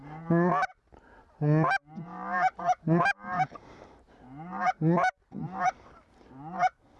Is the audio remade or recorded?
recorded